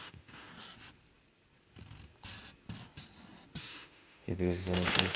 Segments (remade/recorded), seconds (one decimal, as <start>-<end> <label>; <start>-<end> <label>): 0.0-0.5 remade; 0.5-3.6 recorded; 3.6-5.2 remade